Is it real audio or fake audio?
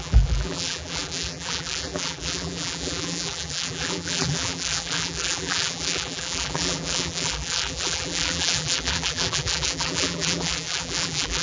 fake